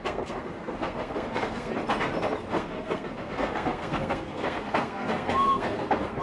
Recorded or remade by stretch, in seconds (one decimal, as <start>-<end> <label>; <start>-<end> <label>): 0.0-1.7 remade; 1.7-2.5 recorded; 2.5-6.2 remade